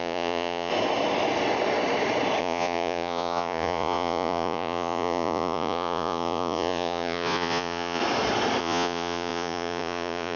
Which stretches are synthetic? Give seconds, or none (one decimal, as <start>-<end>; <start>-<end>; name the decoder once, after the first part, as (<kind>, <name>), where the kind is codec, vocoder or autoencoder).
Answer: 0.0-0.7 (vocoder, Vocos); 2.4-8.0; 8.6-10.4